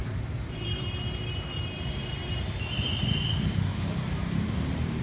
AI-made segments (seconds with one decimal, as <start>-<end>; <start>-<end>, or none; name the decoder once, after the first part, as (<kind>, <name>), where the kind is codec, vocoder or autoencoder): 0.0-5.0 (vocoder, BigVGAN v2)